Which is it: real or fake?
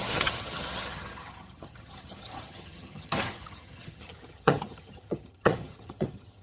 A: fake